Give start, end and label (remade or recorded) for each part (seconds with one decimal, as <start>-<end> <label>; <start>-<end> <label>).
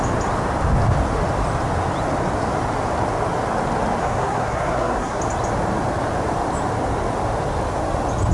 0.0-4.0 recorded; 4.0-5.2 remade; 5.2-8.3 recorded